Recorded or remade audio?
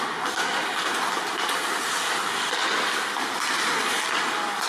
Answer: recorded